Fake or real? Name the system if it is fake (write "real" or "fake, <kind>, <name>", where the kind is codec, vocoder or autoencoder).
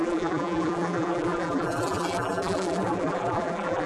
fake, vocoder, BigVGAN v2